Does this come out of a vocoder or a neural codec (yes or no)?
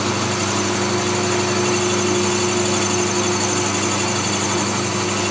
no